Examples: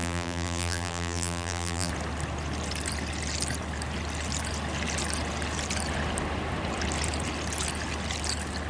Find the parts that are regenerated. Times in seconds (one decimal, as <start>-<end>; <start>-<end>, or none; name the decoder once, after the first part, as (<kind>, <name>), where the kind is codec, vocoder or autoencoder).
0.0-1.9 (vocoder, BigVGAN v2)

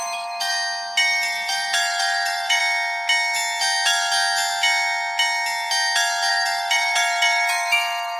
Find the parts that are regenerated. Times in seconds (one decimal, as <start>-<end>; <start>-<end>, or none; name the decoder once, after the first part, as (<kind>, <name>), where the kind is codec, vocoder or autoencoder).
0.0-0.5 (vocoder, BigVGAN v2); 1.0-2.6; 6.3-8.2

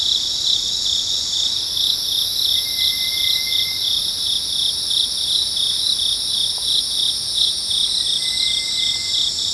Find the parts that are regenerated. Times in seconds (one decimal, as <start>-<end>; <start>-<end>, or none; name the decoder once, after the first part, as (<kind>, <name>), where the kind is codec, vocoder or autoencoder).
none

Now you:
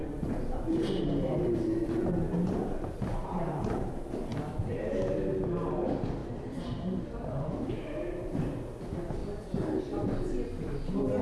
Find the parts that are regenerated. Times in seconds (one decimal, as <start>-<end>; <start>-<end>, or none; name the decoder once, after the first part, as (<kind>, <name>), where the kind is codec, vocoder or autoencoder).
0.0-3.9 (vocoder, BigVGAN v2); 6.2-8.4; 9.2-9.8

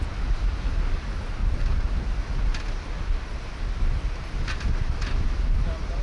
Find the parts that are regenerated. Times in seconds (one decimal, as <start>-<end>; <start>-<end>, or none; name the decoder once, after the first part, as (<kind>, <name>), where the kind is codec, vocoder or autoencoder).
1.4-2.1 (vocoder, BigVGAN v2)

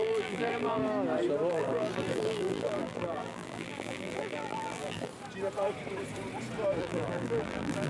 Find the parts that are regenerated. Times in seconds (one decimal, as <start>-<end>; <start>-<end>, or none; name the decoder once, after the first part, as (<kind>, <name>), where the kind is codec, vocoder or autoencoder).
0.0-0.8 (vocoder, BigVGAN v2); 1.5-5.1; 6.8-7.9

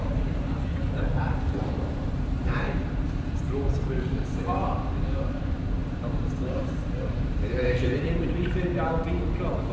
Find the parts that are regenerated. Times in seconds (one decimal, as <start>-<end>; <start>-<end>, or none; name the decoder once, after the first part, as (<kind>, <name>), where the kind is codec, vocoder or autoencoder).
0.0-8.7 (vocoder, BigVGAN v2)